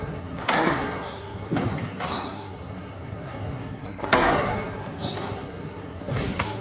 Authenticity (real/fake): fake